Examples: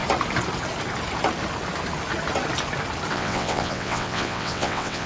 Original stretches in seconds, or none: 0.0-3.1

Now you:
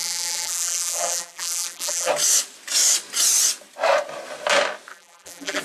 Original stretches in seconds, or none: 2.1-4.9

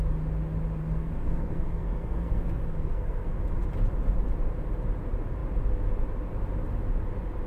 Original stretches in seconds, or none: 0.0-0.8; 3.4-7.5

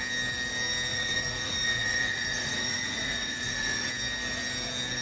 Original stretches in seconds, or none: 0.0-0.9; 3.9-5.0